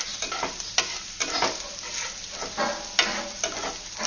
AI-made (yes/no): no